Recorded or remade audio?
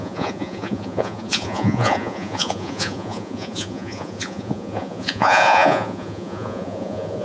remade